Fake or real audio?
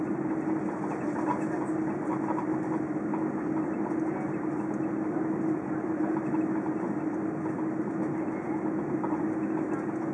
real